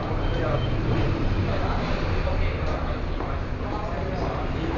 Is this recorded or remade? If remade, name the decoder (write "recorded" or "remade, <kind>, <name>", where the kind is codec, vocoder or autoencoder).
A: remade, vocoder, BigVGAN v2